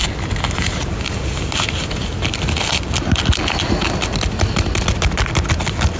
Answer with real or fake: real